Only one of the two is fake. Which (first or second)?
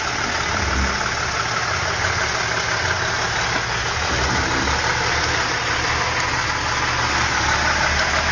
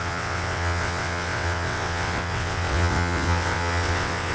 second